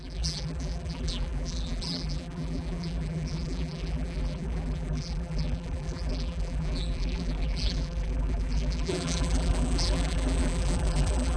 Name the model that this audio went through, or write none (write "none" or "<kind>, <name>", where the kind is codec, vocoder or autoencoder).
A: vocoder, BigVGAN v2